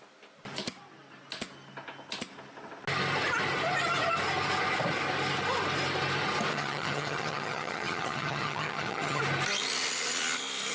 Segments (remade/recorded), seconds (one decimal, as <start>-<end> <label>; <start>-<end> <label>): 0.0-6.5 recorded; 6.5-9.2 remade; 9.2-10.7 recorded